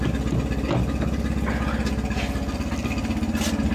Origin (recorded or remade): recorded